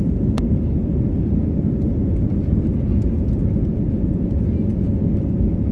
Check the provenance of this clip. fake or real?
real